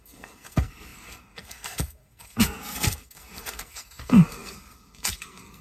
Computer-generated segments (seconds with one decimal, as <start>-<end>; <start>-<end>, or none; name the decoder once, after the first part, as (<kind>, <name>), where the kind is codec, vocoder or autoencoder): 0.0-5.6 (codec, SNAC)